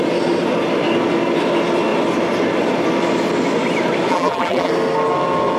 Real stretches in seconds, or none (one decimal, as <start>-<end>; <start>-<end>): 0.0-4.1; 4.7-5.6